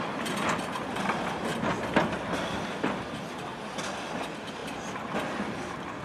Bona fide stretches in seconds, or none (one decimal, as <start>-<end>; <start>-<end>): 0.0-6.0